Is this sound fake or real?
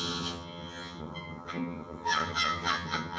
fake